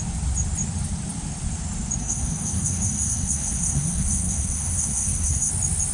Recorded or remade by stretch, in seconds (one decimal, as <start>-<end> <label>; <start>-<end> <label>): 0.0-2.0 recorded; 2.0-5.5 remade; 5.5-5.9 recorded